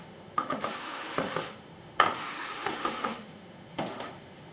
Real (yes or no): no